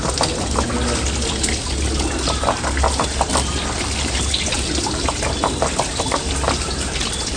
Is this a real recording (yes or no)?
yes